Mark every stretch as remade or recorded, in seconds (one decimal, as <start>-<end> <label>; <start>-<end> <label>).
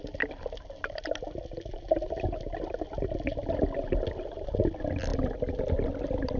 0.0-6.4 recorded